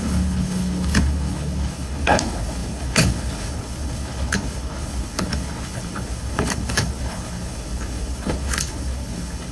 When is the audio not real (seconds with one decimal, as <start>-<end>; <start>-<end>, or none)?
0.0-9.5